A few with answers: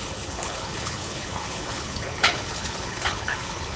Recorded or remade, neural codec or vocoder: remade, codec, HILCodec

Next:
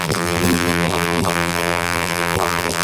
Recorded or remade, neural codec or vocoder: remade, vocoder, BigVGAN v2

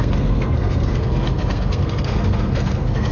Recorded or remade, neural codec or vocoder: remade, codec, SNAC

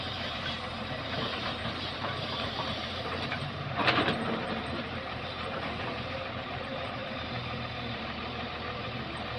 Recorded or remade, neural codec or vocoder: remade, vocoder, BigVGAN v2